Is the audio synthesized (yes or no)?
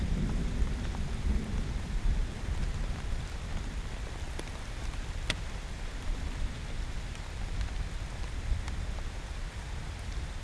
yes